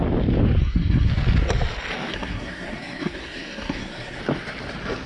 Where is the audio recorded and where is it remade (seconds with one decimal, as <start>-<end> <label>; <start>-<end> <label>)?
0.0-0.6 recorded; 0.6-1.1 remade; 1.1-2.1 recorded; 2.1-4.2 remade; 4.2-5.1 recorded